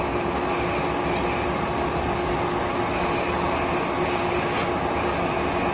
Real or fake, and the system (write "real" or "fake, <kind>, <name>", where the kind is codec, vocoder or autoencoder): real